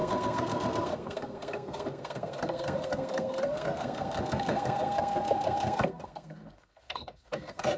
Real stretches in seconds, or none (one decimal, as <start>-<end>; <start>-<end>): none